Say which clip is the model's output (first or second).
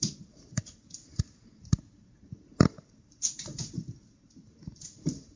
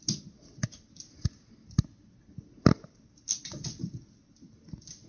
first